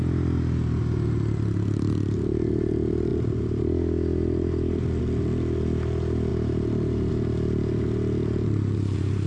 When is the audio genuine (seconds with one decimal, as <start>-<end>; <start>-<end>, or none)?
0.0-6.3; 7.1-9.3